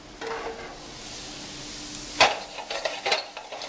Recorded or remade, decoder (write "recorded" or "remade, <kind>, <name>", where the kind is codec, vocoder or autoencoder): recorded